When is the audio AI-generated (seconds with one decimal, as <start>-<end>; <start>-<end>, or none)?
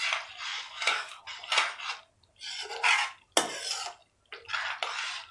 0.5-1.2